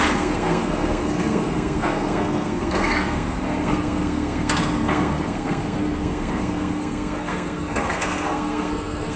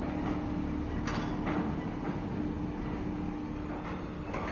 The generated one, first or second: first